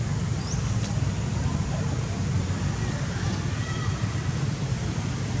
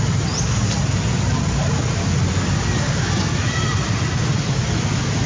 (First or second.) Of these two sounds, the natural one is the second